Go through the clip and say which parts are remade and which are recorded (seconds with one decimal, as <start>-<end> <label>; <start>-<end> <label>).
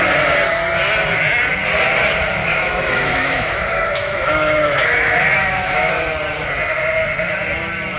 0.0-2.4 recorded; 2.4-5.9 remade; 5.9-8.0 recorded